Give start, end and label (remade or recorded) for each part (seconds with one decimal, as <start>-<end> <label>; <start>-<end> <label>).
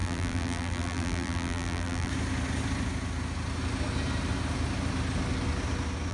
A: 0.0-2.1 remade; 2.1-6.1 recorded